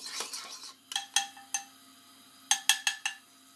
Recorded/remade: recorded